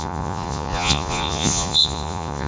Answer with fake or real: fake